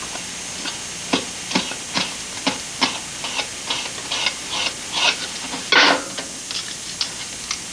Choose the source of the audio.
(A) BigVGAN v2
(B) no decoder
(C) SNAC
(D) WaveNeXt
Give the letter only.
B